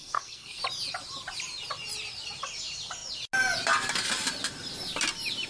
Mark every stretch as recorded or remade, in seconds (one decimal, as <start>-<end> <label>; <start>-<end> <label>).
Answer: 0.0-0.6 remade; 0.6-5.5 recorded